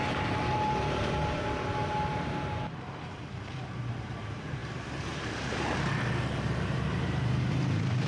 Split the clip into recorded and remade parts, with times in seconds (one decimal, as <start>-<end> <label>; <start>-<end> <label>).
0.0-1.8 remade; 1.8-2.8 recorded; 2.8-8.1 remade